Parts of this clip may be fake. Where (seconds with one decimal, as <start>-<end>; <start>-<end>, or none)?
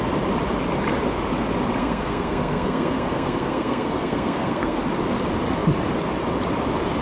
1.8-4.8